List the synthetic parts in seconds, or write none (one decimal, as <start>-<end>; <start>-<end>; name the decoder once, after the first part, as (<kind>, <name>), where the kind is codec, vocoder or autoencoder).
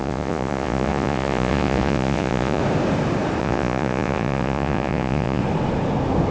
0.0-2.6 (vocoder, Vocos); 3.4-5.4